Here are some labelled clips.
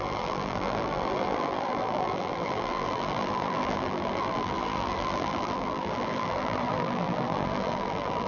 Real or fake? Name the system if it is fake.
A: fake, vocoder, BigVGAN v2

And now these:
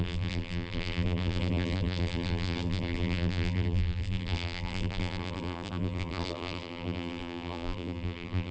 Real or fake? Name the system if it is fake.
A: fake, vocoder, BigVGAN v2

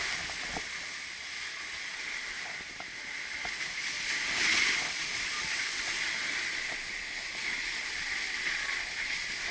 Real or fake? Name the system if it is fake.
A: real